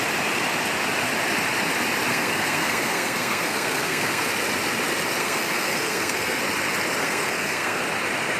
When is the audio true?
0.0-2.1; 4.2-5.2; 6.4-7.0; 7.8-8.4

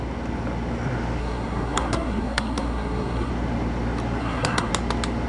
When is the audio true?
0.0-1.2; 3.3-4.2; 4.7-5.3

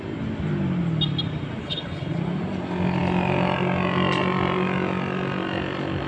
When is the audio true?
0.0-1.6; 2.2-6.1

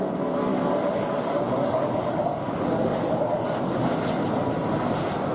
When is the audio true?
0.0-0.5; 3.7-5.3

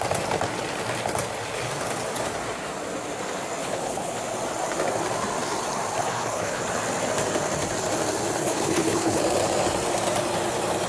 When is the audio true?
0.0-3.6; 4.2-6.0; 6.6-8.4; 9.2-10.9

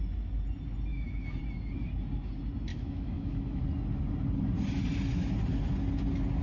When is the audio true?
0.0-0.9; 1.4-2.7; 3.6-6.4

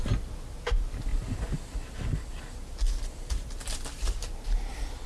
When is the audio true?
0.0-5.1

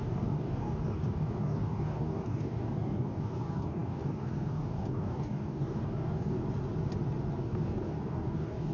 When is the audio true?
6.4-7.4